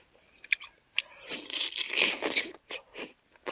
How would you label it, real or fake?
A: real